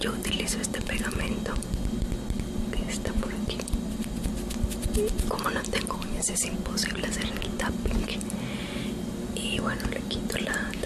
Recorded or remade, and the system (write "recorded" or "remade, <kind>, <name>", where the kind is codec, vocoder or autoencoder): recorded